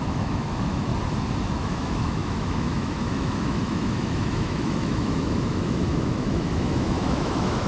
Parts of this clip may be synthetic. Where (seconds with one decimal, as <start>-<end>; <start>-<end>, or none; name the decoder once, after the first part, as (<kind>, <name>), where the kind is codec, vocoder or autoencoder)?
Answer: 0.0-0.9 (autoencoder, DAC-VAE); 1.5-7.7